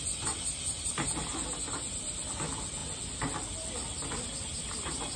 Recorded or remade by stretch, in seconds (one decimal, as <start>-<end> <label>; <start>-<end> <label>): 0.0-5.2 recorded